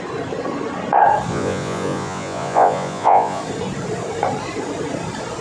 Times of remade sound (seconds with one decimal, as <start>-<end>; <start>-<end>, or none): 1.3-3.4